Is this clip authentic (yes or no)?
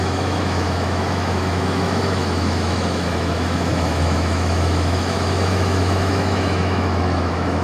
no